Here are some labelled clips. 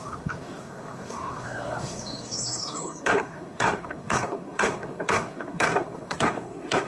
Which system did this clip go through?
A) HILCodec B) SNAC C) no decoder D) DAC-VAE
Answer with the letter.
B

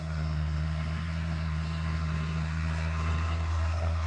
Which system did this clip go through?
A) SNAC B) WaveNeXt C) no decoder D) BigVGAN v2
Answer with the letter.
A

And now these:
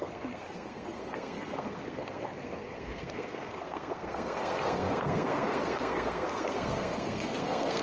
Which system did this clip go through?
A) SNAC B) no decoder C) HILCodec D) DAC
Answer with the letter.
A